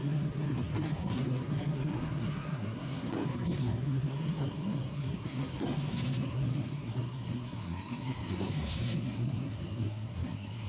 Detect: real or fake fake